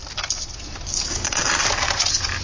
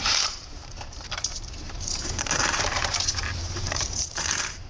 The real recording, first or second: first